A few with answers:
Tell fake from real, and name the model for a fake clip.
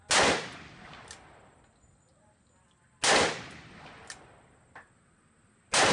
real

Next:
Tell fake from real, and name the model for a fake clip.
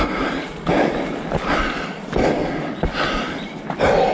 real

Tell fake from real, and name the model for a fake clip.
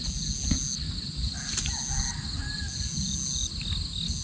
real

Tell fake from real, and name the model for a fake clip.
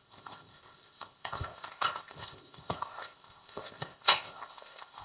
fake, codec, ZipCodec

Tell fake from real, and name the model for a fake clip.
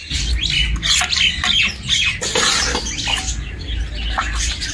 real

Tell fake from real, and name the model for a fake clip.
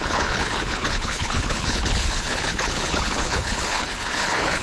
fake, codec, HILCodec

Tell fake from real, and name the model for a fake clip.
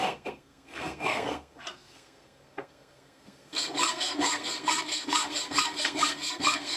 fake, codec, SNAC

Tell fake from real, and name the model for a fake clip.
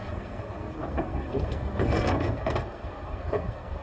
fake, codec, SNAC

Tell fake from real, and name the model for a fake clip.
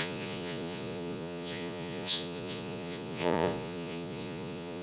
fake, vocoder, Vocos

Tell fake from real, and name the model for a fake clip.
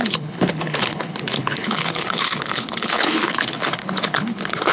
fake, codec, HILCodec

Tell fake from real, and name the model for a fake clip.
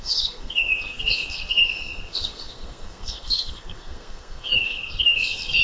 fake, codec, SNAC